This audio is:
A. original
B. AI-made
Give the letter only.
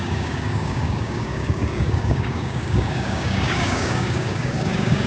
B